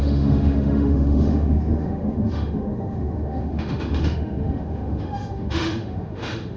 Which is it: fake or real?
fake